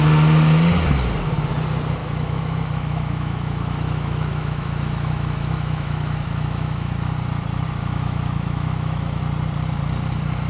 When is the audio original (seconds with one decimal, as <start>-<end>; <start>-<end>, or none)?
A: 0.0-2.0; 6.9-7.8; 9.2-10.5